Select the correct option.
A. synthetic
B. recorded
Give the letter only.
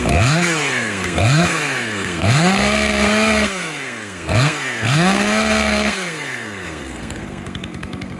A